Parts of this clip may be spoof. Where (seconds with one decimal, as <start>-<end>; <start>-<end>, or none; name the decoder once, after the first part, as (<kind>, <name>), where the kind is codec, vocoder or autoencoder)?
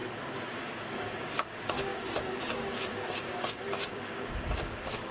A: 0.6-5.1 (codec, DAC)